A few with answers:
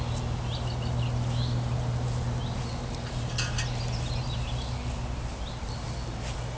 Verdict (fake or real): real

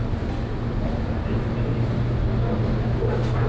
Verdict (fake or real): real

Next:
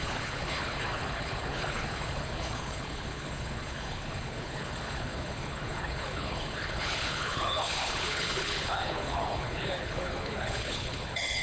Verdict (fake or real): fake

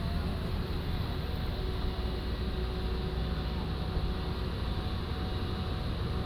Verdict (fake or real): real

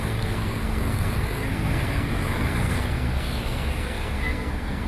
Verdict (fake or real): fake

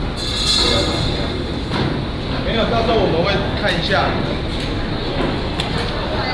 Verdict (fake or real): real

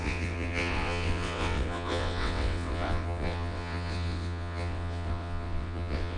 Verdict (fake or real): fake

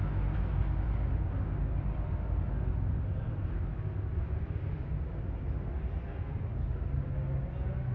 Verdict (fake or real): real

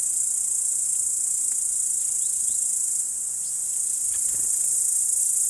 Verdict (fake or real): real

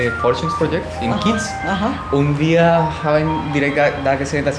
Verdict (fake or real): real